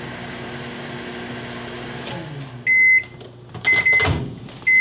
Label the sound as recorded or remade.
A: recorded